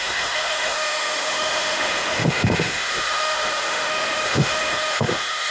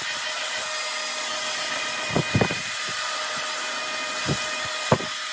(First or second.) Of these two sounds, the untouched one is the second